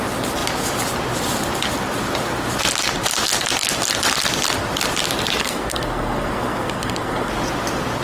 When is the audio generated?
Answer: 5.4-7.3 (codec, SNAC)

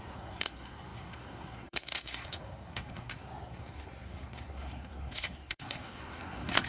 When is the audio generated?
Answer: 0.0-6.7 (codec, SNAC)

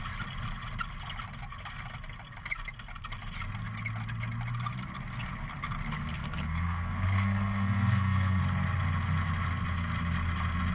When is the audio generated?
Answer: 6.2-8.4 (codec, SNAC)

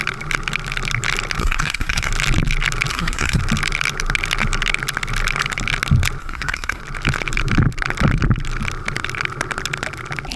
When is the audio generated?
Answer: 1.4-2.1 (codec, SNAC); 2.9-3.4; 6.2-6.8

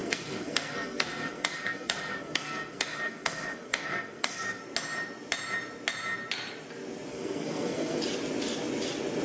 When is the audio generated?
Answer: 0.0-4.6 (codec, SNAC); 7.1-8.0

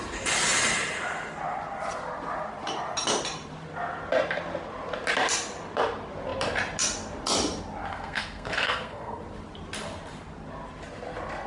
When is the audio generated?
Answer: 7.9-9.2 (codec, SNAC)

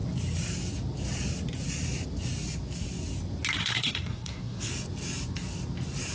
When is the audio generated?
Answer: 3.6-4.7 (codec, SNAC)

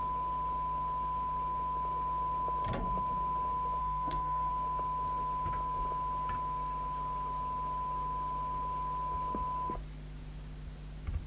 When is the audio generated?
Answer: 3.8-4.5 (codec, SNAC)